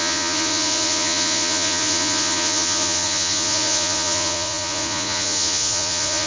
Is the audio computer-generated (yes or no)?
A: yes